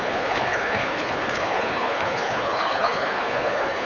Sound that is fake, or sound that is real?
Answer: fake